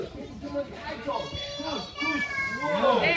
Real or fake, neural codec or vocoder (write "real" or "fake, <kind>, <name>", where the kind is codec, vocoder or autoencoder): fake, vocoder, BigVGAN v2